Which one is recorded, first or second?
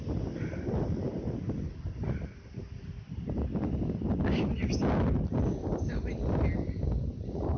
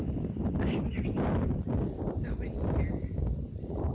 first